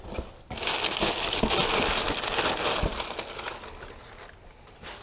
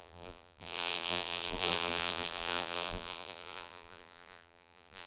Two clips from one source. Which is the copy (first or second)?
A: second